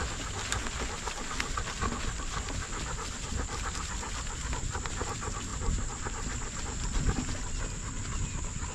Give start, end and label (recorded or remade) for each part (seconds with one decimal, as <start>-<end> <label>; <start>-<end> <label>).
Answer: 0.0-8.7 recorded